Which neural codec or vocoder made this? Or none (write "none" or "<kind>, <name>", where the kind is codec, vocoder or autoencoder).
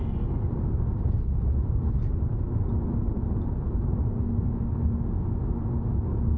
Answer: none